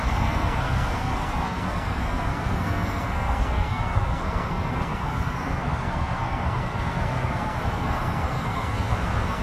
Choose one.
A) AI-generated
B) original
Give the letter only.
A